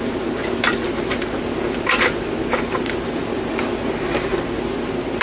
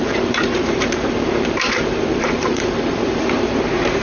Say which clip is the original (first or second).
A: first